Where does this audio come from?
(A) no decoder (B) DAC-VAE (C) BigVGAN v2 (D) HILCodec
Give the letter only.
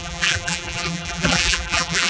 C